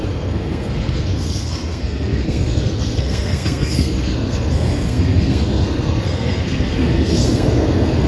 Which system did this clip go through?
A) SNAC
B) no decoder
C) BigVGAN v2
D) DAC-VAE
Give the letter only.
A